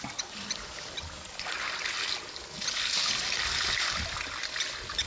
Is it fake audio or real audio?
real